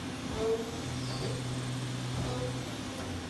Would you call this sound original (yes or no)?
yes